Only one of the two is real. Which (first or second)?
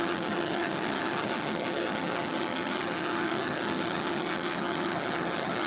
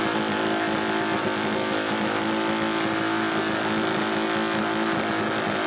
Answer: second